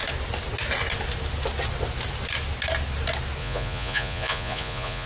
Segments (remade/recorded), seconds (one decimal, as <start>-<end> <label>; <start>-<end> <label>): 0.0-3.4 recorded; 3.4-5.1 remade